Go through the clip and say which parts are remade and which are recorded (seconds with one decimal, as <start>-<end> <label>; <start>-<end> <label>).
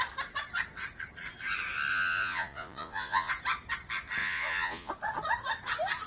0.0-1.9 recorded; 1.9-3.3 remade; 3.3-4.2 recorded; 4.2-4.9 remade; 4.9-6.1 recorded